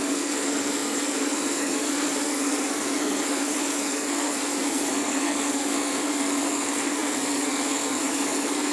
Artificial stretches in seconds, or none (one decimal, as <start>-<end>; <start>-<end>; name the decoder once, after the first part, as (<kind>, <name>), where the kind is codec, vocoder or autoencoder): 0.0-8.7 (codec, SNAC)

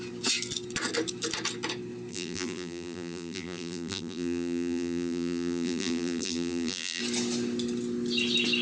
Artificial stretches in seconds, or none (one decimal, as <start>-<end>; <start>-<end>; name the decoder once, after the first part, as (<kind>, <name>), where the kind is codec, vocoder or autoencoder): 2.1-7.0 (vocoder, BigVGAN v2)

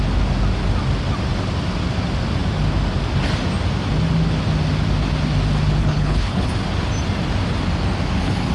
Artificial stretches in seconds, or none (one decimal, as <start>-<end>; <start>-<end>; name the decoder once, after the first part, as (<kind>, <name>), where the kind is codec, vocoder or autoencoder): 5.8-6.5 (codec, HILCodec)